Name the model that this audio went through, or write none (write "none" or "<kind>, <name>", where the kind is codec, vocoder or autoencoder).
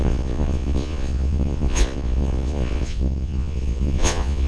vocoder, Vocos